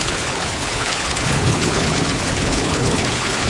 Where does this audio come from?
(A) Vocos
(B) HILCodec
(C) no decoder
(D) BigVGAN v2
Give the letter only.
B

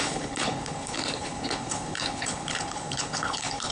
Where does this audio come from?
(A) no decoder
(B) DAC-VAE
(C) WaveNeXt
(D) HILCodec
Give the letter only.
D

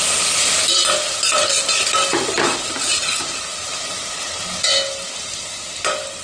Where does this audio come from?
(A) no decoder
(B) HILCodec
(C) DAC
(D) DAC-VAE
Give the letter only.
A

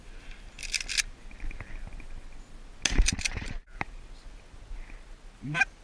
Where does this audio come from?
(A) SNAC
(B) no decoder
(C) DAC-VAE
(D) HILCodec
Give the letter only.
B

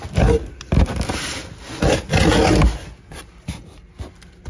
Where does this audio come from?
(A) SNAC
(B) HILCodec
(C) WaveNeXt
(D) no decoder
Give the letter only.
D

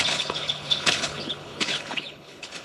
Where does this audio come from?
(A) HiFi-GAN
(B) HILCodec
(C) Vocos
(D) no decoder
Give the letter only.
B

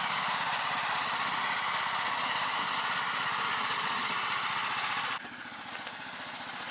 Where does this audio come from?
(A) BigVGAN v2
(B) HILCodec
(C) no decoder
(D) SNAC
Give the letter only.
C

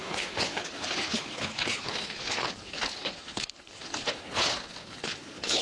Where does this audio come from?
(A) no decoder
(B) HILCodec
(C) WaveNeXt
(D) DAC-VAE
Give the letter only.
B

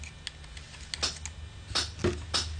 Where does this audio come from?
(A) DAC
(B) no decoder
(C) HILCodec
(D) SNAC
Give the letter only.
B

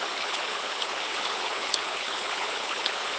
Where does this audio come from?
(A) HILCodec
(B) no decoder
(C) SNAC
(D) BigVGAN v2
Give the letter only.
A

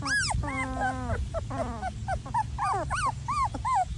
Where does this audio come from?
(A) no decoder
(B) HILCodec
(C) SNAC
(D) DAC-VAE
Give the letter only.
A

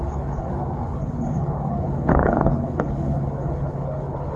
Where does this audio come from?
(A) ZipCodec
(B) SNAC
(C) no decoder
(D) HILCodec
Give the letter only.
D